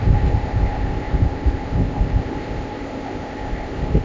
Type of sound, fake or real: fake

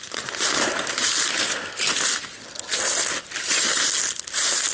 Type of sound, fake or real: real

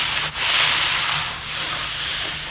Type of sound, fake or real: real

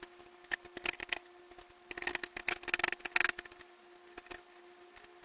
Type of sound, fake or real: real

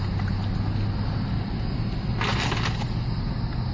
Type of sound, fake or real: real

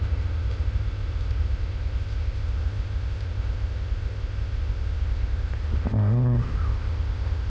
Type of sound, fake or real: fake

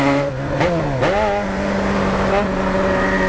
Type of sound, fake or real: real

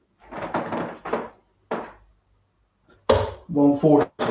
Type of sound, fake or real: real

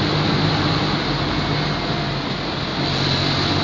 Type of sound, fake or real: real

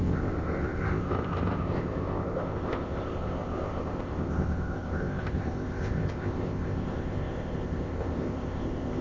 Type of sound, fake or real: fake